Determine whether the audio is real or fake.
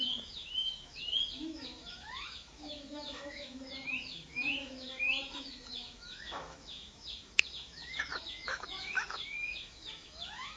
fake